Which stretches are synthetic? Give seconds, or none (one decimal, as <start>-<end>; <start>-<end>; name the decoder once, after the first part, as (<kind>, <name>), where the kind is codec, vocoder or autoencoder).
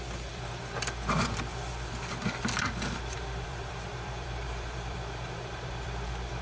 0.0-6.4 (vocoder, BigVGAN v2)